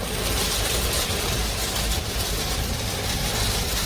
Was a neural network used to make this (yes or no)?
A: no